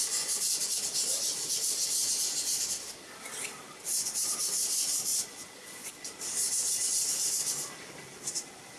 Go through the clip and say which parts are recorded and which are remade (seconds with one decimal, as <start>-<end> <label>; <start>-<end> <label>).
0.0-0.6 remade; 0.6-5.1 recorded; 5.1-5.9 remade; 5.9-8.8 recorded